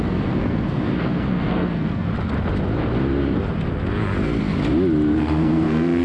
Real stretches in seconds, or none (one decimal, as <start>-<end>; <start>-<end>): 2.1-5.2